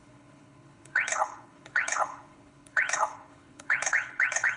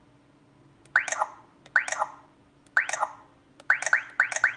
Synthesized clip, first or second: first